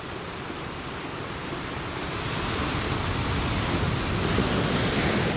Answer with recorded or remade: recorded